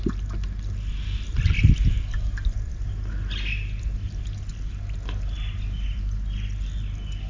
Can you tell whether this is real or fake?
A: real